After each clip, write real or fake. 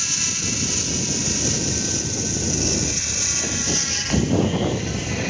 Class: real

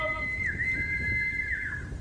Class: real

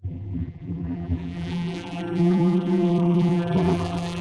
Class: fake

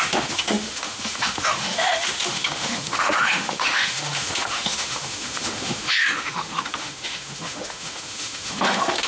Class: fake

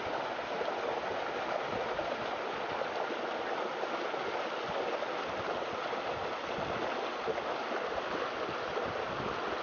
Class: real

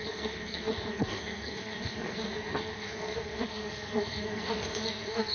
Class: fake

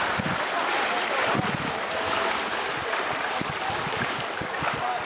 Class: real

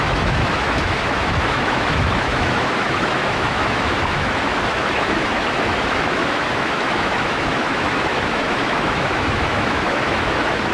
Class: fake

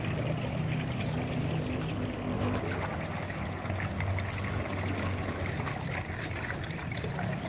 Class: real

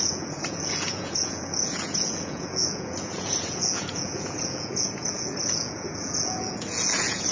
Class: fake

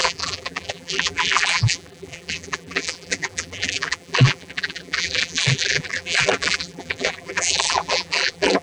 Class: fake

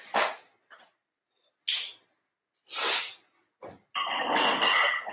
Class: real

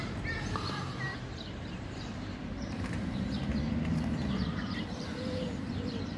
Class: fake